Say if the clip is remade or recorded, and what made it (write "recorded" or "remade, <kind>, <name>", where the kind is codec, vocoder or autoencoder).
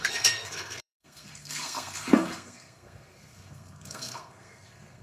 remade, codec, SNAC